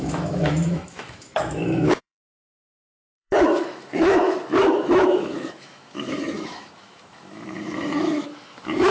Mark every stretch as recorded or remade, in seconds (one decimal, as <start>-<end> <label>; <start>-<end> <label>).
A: 0.0-8.9 remade